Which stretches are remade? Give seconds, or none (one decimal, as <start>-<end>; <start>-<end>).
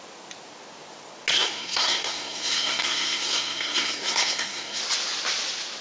1.3-4.8